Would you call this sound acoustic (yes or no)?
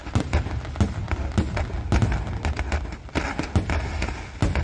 yes